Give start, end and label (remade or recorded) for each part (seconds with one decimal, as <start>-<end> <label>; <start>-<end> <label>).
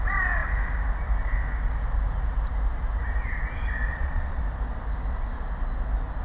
0.0-3.9 recorded; 3.9-4.4 remade; 4.4-6.2 recorded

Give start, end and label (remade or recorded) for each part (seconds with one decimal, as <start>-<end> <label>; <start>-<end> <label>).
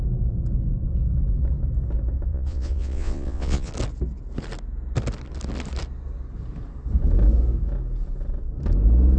0.0-2.3 recorded; 2.3-3.7 remade; 3.7-9.2 recorded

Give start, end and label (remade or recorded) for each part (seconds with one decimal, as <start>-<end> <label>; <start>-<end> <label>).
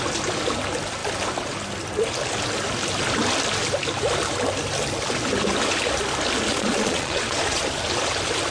0.0-6.5 recorded; 6.5-7.6 remade; 7.6-8.5 recorded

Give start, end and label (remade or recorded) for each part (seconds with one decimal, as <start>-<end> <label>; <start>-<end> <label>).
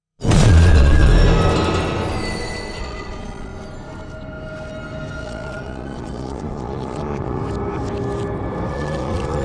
0.0-1.1 remade; 1.1-2.8 recorded; 2.8-3.5 remade; 3.5-5.2 recorded; 5.2-7.4 remade; 7.4-8.7 recorded; 8.7-9.4 remade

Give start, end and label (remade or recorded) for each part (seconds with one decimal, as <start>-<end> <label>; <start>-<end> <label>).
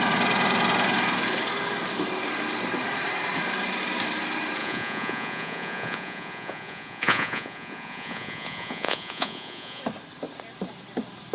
0.0-4.6 recorded; 4.6-9.8 remade; 9.8-11.3 recorded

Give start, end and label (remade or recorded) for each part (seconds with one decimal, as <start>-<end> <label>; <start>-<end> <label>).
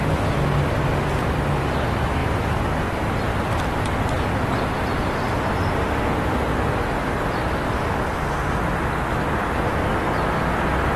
0.0-11.0 recorded